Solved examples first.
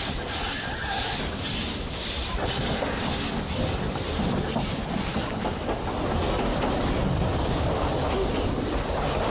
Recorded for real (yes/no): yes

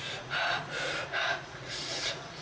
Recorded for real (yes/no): no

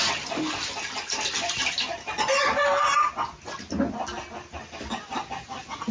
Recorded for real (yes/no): yes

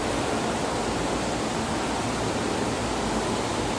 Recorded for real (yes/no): yes